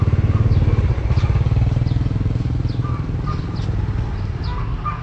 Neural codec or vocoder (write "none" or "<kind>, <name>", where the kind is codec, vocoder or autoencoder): none